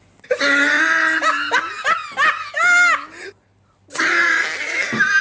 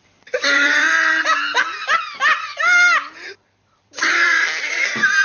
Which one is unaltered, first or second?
first